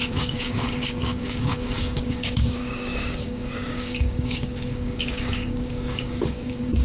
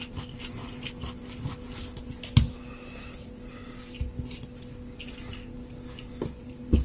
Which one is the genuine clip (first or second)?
second